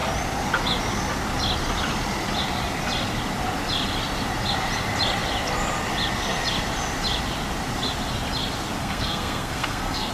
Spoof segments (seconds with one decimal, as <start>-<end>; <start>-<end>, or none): 8.8-10.1

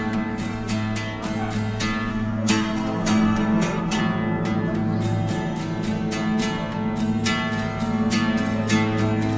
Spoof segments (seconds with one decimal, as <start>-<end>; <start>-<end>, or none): 2.1-4.0

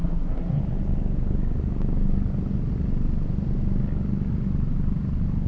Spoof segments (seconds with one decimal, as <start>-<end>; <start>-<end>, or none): 0.0-0.6

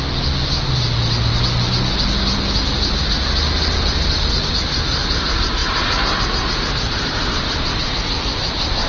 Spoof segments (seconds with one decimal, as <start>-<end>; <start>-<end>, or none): none

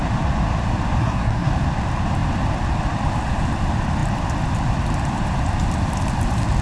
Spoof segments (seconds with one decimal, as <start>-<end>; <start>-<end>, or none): 1.0-1.5

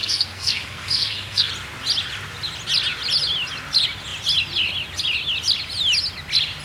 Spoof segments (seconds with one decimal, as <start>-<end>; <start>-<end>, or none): 0.0-1.5

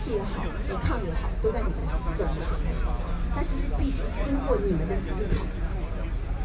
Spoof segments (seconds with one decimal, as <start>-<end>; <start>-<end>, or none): none

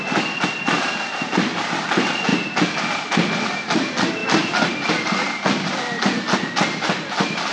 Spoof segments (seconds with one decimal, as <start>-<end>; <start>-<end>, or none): none